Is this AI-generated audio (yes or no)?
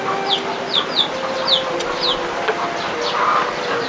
no